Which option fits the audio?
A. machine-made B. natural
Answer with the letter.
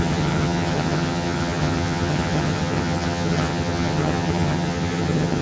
A